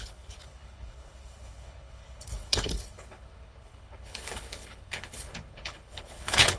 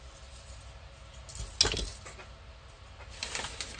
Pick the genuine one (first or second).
second